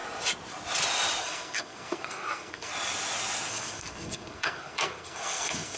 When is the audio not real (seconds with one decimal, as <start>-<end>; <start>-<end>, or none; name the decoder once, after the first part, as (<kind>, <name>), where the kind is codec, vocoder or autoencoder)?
1.2-2.7 (codec, SNAC); 3.5-5.8